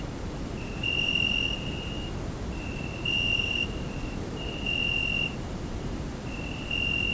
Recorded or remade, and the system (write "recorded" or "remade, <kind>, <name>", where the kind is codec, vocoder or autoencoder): recorded